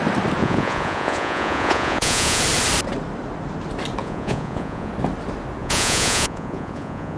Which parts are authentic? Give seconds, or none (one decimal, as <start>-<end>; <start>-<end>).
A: 0.0-0.4; 2.4-4.0; 4.9-5.6